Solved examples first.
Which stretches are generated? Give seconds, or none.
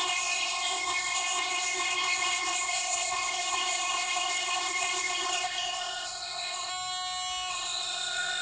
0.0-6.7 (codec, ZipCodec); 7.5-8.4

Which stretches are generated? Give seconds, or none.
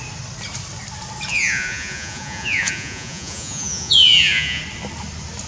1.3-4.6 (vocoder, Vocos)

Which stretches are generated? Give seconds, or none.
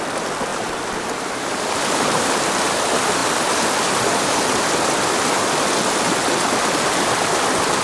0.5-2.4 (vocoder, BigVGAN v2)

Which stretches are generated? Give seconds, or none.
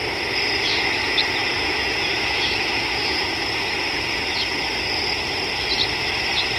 1.4-3.3 (autoencoder, DAC-VAE)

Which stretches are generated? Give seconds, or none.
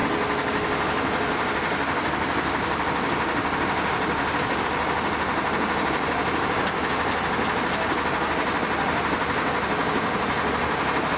none